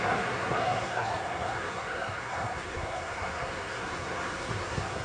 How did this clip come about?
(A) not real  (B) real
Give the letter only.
A